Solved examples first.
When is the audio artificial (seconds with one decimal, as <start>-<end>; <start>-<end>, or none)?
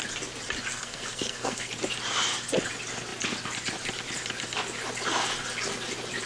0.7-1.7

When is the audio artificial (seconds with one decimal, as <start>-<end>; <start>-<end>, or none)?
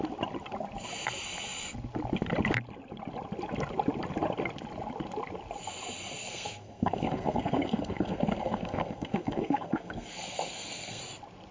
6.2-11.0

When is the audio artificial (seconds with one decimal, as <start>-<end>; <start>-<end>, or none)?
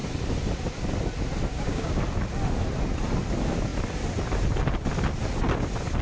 1.5-2.0